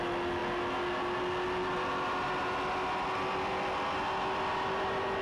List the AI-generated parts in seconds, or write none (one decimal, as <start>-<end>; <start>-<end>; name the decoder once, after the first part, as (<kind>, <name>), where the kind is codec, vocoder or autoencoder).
none